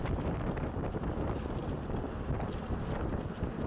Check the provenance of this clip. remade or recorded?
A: recorded